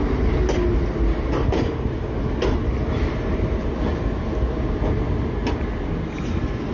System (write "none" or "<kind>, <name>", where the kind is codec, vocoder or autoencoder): none